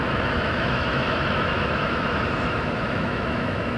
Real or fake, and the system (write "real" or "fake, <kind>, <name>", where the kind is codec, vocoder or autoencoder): fake, autoencoder, DAC-VAE